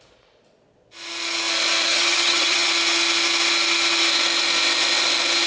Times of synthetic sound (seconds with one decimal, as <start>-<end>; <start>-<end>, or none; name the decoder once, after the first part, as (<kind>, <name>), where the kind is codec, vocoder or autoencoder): 1.9-2.7 (vocoder, HiFi-GAN)